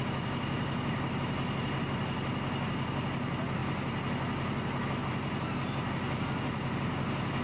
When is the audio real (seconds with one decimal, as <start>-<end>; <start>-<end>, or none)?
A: 0.0-7.4